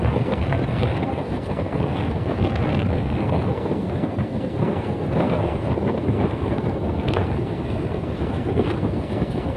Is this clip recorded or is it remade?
remade